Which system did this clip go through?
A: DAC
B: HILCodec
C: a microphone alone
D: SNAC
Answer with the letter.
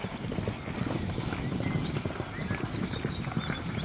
C